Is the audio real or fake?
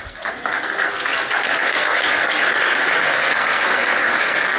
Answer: fake